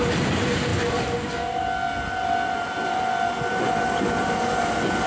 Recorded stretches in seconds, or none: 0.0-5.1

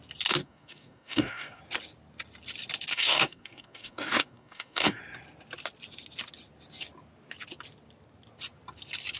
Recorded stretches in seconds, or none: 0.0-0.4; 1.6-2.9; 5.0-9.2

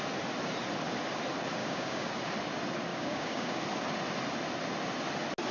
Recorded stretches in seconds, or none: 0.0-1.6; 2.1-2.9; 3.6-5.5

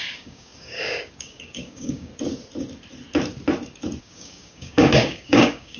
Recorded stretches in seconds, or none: 2.1-4.0

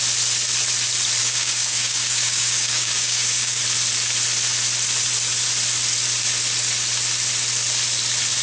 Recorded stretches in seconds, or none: 0.0-1.2; 3.6-8.4

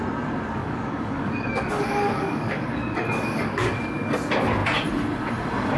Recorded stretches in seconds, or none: 0.0-0.6; 4.1-5.8